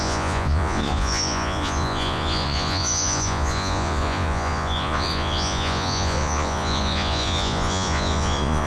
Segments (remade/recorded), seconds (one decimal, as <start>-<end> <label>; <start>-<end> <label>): 0.0-8.7 remade